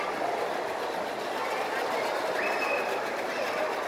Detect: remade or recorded recorded